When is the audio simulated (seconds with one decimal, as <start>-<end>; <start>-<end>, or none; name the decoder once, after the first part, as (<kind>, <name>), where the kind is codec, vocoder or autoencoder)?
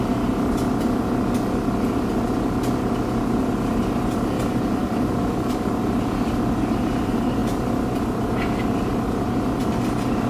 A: 4.8-5.7 (codec, DAC)